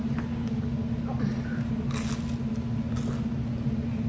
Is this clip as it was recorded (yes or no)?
yes